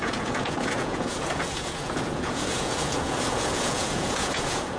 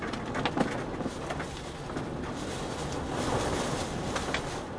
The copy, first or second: first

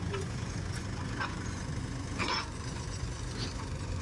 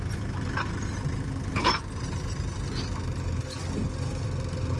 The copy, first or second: first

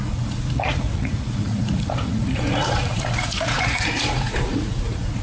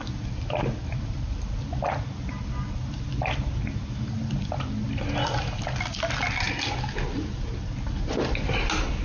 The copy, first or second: first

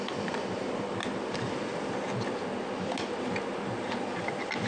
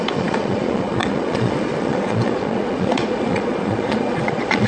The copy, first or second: second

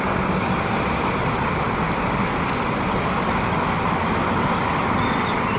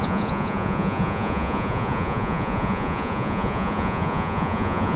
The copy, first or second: second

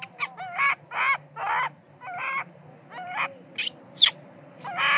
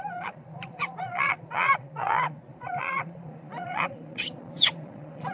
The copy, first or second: second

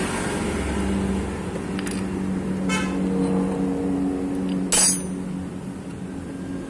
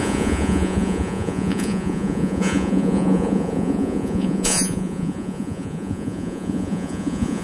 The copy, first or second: second